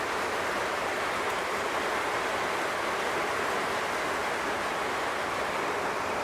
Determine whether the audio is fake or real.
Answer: real